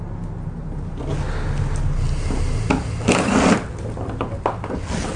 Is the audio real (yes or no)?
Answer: yes